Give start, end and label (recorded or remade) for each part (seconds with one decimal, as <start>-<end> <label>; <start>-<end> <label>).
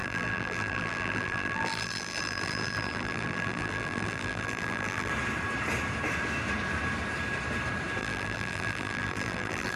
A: 0.0-5.1 remade; 5.1-8.0 recorded; 8.0-9.8 remade